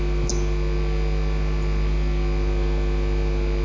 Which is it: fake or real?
real